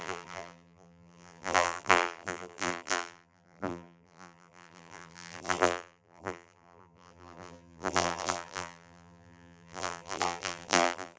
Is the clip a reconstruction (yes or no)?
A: yes